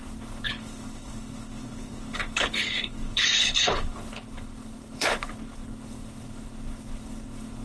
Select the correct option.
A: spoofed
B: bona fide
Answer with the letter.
A